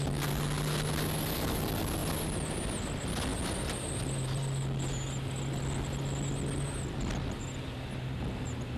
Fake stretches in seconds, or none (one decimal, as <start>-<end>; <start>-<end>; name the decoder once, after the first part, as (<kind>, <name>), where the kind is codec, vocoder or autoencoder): none